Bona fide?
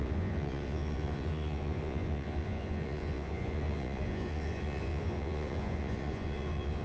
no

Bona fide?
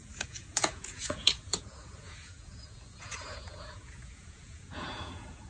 no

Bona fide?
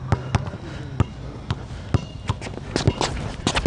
yes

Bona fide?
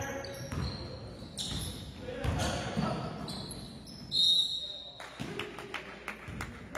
yes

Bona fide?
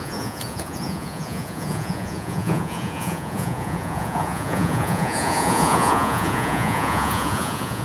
no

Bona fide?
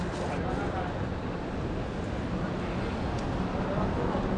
yes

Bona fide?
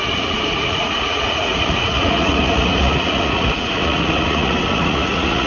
no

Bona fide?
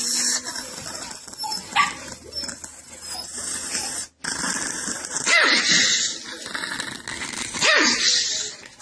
yes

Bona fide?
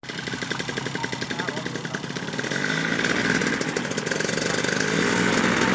yes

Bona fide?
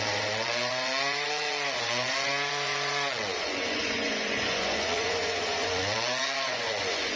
no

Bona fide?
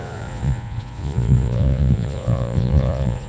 no